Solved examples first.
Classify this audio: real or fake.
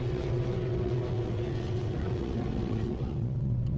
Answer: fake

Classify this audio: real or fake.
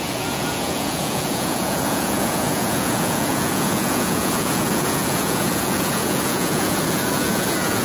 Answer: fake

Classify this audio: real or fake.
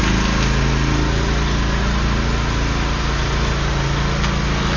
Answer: real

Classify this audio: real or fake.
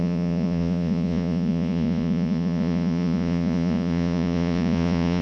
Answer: fake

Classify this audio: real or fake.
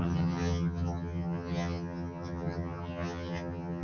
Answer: fake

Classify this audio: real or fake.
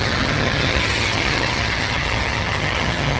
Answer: fake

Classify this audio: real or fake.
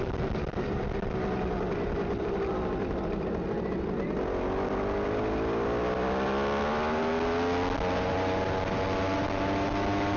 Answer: real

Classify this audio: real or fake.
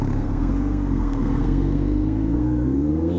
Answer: fake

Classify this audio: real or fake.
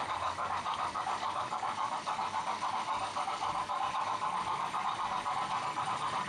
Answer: fake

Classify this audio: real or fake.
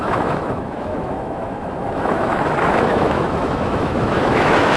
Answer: fake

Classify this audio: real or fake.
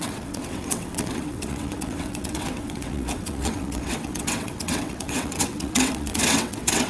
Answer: fake